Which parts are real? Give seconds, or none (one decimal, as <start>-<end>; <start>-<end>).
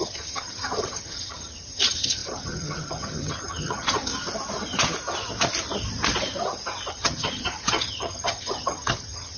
4.1-6.9